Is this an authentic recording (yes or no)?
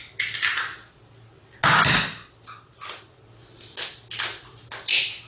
yes